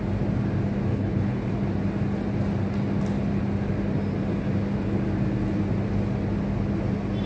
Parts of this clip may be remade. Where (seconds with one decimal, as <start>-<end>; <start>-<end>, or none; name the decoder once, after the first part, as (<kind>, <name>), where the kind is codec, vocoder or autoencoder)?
0.9-1.5 (codec, HILCodec)